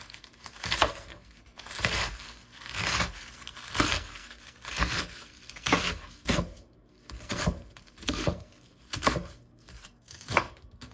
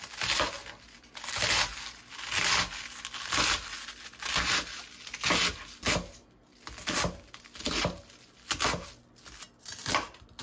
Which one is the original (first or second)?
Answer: second